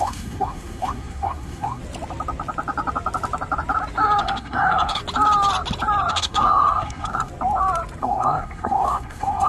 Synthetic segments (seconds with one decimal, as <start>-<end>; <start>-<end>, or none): 0.0-1.8; 4.2-5.0; 6.1-7.3; 8.0-9.5